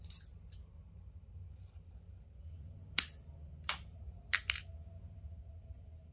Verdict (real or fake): real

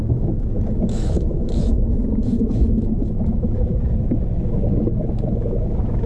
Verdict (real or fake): fake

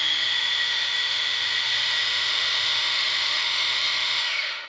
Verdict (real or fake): fake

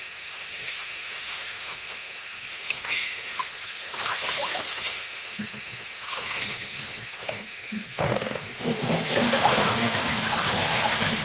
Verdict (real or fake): fake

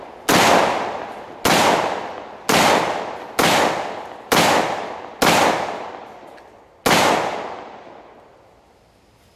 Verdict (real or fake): real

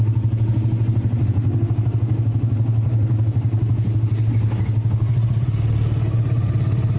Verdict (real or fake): real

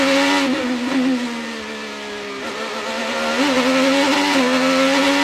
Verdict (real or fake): real